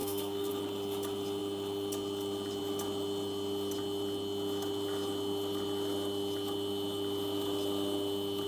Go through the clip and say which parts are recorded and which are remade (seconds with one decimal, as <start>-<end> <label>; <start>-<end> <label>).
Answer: 0.0-0.5 remade; 0.5-8.5 recorded

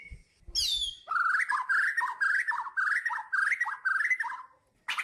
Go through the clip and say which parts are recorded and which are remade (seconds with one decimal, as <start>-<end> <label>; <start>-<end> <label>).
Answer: 0.0-5.0 recorded